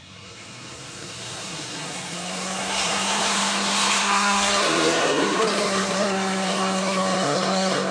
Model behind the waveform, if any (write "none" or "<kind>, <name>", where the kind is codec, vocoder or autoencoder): codec, SNAC